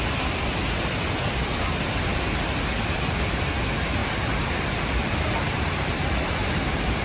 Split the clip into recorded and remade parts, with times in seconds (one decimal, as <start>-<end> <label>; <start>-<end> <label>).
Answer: 0.0-4.0 recorded; 4.0-6.5 remade; 6.5-7.0 recorded